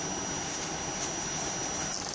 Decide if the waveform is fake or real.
real